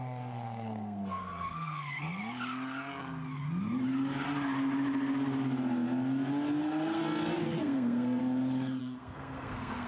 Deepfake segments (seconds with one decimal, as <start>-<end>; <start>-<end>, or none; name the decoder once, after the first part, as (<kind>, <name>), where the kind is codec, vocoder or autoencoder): 0.0-2.2 (codec, SNAC); 6.6-7.0; 7.6-8.2; 8.8-9.9